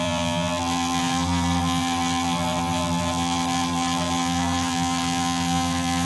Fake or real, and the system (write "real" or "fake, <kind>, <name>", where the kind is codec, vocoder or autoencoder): fake, vocoder, BigVGAN v2